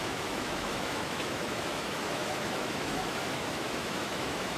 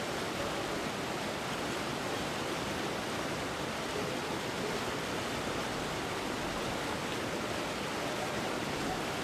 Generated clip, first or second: first